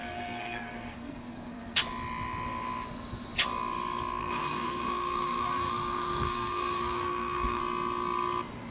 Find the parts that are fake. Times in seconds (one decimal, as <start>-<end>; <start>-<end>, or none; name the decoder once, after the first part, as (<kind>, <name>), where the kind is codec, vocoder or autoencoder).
0.0-1.8 (codec, SNAC); 4.2-7.6

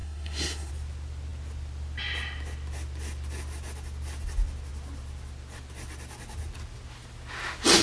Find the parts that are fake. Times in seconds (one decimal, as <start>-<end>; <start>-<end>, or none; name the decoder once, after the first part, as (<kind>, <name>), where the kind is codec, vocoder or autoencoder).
0.0-0.7 (codec, SNAC)

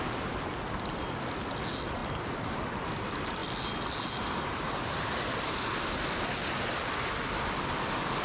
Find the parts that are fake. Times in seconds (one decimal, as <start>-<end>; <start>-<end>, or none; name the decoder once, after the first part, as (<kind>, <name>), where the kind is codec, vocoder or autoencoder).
none

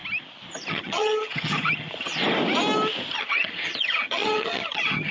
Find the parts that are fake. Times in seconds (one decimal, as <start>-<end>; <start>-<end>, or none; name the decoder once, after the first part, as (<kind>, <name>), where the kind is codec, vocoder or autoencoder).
0.7-2.2 (vocoder, HiFi-GAN); 3.1-5.1

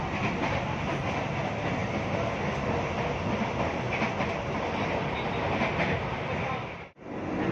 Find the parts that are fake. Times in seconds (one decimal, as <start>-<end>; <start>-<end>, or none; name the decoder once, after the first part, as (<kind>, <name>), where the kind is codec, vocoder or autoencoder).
none